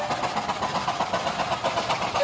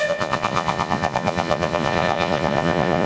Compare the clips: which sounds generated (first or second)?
second